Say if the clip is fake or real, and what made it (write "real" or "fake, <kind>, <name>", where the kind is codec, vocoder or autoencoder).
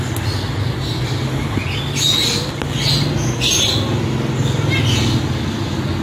real